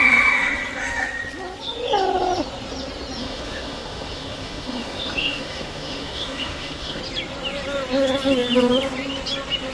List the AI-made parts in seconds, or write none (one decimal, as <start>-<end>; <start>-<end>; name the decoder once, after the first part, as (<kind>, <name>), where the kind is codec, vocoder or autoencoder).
3.2-7.0 (autoencoder, DAC-VAE)